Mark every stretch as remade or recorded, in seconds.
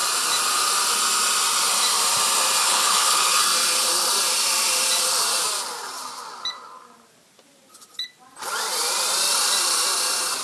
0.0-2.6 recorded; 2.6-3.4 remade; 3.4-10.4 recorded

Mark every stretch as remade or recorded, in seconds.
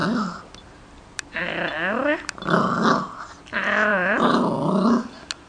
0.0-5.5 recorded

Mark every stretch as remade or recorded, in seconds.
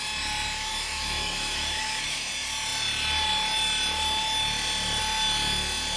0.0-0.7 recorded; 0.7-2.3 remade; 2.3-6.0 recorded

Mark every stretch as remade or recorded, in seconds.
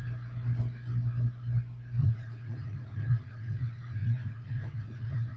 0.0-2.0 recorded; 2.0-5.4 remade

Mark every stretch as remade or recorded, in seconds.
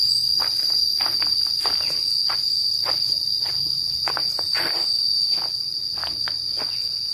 0.0-2.2 remade; 2.2-2.7 recorded; 2.7-7.1 remade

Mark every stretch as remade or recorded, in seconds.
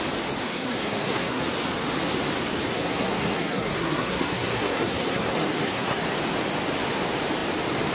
0.0-0.4 recorded; 0.4-1.4 remade; 1.4-2.7 recorded; 2.7-6.0 remade; 6.0-7.9 recorded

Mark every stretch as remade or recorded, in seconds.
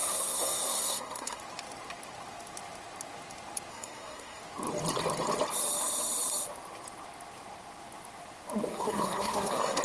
0.0-1.4 remade; 1.4-3.7 recorded; 3.7-4.4 remade; 4.4-8.7 recorded; 8.7-9.8 remade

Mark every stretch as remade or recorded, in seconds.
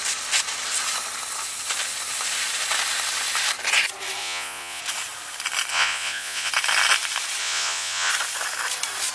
0.0-4.2 recorded; 4.2-4.8 remade; 4.8-5.7 recorded; 5.7-6.5 remade; 6.5-7.4 recorded; 7.4-8.1 remade; 8.1-9.1 recorded